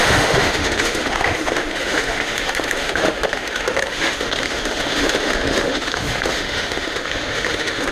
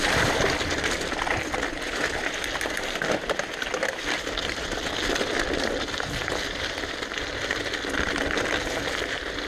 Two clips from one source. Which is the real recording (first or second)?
second